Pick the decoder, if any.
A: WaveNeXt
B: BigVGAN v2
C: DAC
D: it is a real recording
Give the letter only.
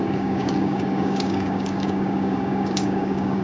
C